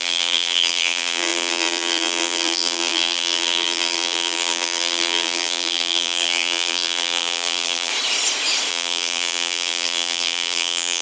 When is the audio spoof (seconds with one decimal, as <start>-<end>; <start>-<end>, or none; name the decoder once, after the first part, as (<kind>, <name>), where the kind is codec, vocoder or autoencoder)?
0.0-7.9 (vocoder, BigVGAN v2); 8.7-11.0